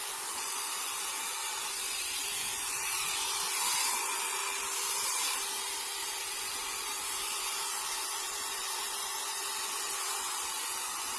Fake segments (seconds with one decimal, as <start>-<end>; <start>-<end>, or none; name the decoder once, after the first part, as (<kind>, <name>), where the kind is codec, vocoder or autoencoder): 0.0-4.4 (vocoder, Vocos); 6.2-11.2